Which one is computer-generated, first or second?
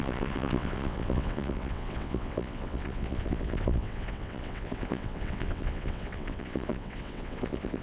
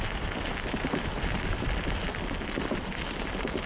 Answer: first